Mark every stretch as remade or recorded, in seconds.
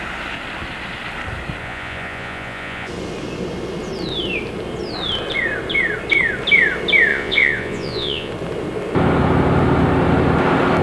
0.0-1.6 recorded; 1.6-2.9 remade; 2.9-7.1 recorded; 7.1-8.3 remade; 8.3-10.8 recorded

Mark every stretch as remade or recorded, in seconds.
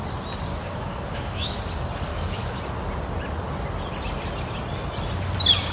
0.0-0.5 recorded; 0.5-1.6 remade; 1.6-2.1 recorded; 2.1-2.6 remade; 2.6-5.7 recorded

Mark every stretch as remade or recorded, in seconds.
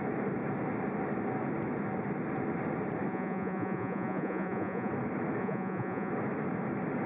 0.0-3.1 recorded; 3.1-4.9 remade; 4.9-5.4 recorded; 5.4-6.1 remade; 6.1-7.1 recorded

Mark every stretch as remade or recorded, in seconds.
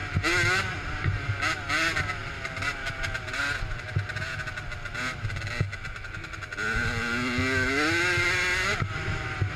0.0-9.6 recorded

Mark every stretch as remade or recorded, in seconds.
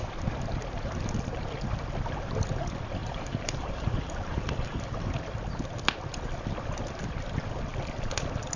0.0-3.0 recorded; 3.0-5.1 remade; 5.1-8.6 recorded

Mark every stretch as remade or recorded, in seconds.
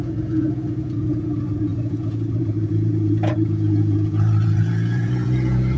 0.0-5.8 remade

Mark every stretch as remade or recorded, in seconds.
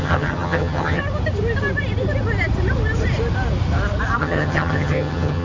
0.0-1.0 remade; 1.0-4.2 recorded; 4.2-5.4 remade